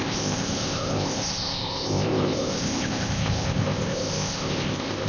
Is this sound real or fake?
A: fake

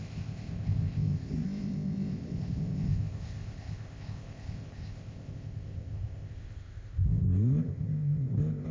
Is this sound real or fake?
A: fake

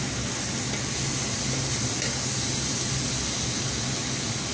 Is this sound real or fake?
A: real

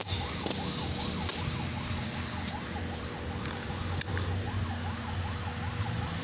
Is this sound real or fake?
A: real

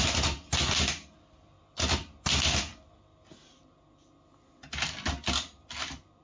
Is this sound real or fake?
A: real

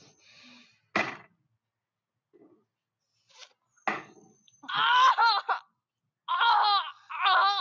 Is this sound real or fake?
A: real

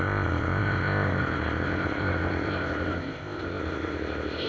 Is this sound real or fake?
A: fake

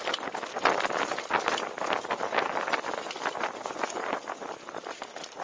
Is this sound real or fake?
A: real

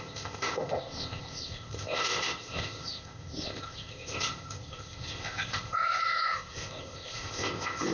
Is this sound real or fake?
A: fake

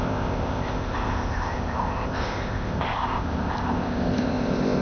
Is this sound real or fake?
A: fake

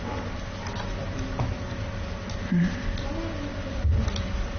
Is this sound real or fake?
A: real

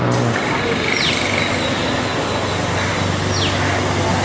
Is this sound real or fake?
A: real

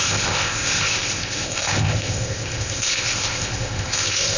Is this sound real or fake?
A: fake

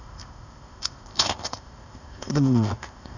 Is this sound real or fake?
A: fake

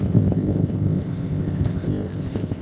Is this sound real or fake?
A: fake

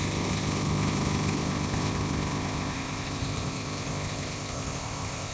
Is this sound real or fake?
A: fake